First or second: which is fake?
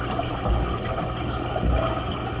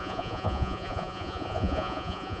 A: second